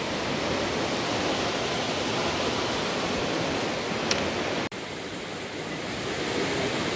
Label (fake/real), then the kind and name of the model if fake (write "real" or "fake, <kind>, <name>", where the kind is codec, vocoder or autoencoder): real